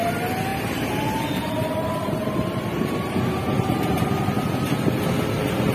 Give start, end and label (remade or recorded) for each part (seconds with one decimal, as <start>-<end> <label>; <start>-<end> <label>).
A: 0.0-0.5 recorded; 0.5-3.1 remade; 3.1-5.7 recorded